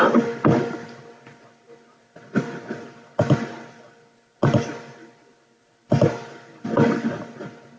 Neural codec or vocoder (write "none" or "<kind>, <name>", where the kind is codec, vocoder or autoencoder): none